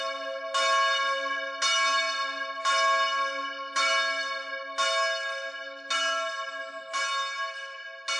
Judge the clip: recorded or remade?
recorded